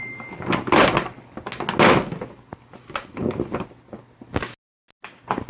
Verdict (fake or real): real